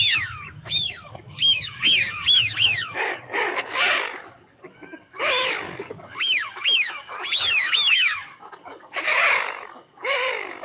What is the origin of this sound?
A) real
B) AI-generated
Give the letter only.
B